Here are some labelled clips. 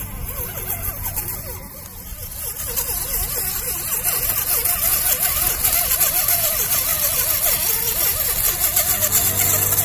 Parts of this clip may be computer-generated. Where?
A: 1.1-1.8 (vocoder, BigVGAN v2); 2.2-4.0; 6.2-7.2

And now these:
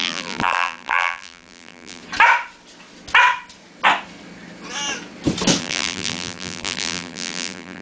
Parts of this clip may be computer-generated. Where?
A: 0.0-2.0 (vocoder, BigVGAN v2); 5.6-7.8

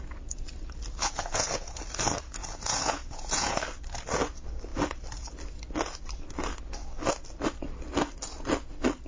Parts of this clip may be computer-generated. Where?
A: 1.0-1.8 (vocoder, Vocos); 2.4-3.6

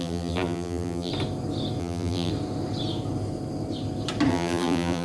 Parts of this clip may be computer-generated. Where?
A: 0.0-1.1 (vocoder, BigVGAN v2); 1.8-2.3; 4.3-5.0